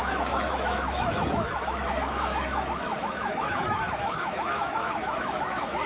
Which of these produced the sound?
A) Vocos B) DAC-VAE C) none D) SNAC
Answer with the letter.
B